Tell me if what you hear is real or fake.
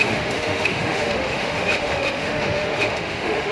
fake